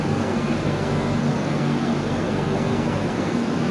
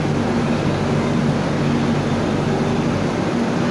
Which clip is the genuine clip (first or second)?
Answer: second